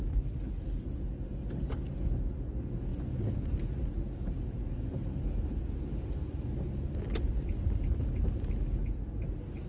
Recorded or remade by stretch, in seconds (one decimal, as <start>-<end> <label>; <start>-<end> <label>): 0.0-9.7 recorded